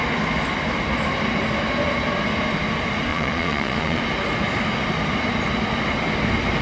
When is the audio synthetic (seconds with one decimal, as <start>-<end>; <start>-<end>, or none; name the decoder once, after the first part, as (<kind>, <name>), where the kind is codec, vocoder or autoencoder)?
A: 3.1-4.0 (vocoder, Vocos)